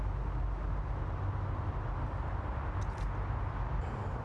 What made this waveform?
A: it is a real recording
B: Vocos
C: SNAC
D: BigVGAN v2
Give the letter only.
A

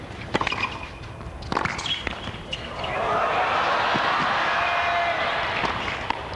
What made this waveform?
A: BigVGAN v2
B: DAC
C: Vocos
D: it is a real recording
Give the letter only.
D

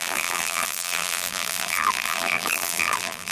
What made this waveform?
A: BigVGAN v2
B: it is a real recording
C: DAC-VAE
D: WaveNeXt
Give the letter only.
A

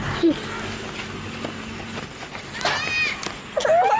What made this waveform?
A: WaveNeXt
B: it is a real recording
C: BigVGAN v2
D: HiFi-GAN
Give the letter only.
B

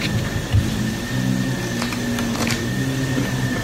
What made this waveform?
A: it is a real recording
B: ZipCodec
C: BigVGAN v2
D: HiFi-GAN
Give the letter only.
A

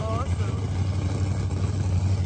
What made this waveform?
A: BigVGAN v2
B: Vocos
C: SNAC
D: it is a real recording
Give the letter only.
A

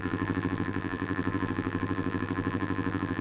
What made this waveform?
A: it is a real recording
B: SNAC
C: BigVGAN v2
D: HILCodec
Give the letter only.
C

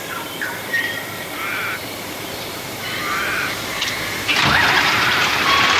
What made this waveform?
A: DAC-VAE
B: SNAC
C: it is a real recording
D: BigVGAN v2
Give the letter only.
D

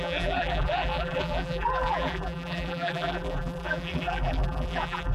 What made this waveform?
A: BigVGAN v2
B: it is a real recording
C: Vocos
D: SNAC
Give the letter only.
A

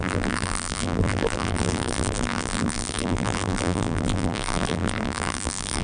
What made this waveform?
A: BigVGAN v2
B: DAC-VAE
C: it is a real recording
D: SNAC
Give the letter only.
A